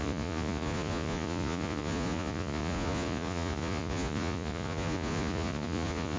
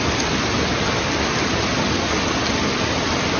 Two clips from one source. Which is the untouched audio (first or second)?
second